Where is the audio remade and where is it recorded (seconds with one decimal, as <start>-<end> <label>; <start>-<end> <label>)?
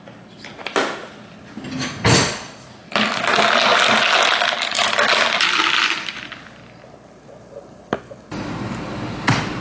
0.0-9.6 recorded